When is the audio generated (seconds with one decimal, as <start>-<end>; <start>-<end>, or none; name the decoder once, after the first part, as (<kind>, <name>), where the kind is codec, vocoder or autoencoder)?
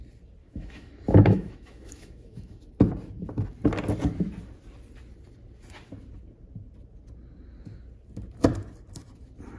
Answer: 0.4-2.6 (autoencoder, DAC-VAE)